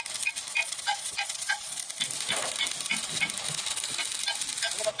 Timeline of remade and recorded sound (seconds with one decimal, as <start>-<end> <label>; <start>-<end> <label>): 0.0-0.6 recorded; 0.6-1.8 remade; 1.8-5.0 recorded